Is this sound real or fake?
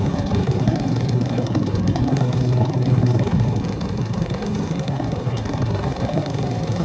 fake